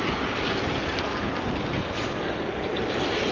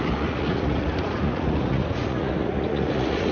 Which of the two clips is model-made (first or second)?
second